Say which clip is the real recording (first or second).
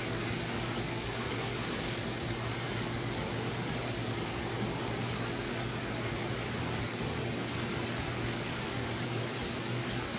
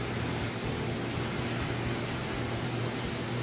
second